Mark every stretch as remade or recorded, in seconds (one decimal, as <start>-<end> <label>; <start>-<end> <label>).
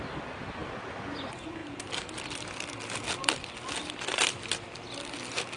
0.0-0.6 recorded; 0.6-1.1 remade; 1.1-1.6 recorded; 1.6-5.0 remade; 5.0-5.6 recorded